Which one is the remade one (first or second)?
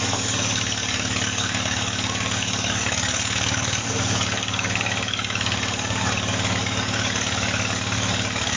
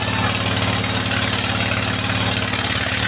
first